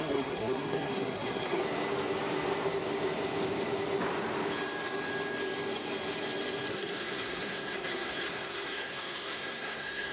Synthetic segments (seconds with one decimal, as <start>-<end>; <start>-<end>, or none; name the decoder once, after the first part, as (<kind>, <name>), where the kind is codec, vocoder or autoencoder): 0.0-1.6 (codec, SNAC); 6.7-10.1